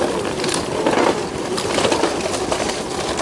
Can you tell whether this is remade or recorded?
remade